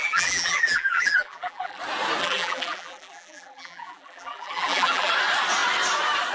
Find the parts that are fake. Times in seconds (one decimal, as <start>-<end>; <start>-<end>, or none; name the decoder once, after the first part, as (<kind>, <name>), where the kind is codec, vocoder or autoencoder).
0.0-1.8 (vocoder, BigVGAN v2); 2.2-5.1